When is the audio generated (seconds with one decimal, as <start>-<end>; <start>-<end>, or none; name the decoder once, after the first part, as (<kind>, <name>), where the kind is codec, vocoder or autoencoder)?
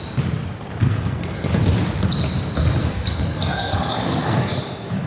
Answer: 0.8-1.6 (codec, SNAC); 2.8-4.6